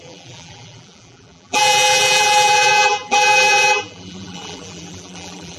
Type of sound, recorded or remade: remade